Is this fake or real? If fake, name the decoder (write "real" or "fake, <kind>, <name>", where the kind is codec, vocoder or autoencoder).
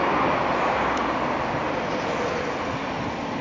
real